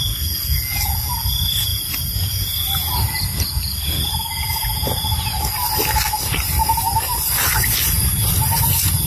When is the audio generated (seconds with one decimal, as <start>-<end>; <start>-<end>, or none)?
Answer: 6.3-9.1